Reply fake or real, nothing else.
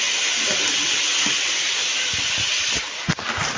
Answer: real